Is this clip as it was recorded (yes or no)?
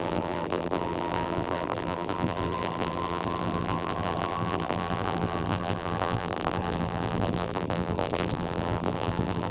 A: no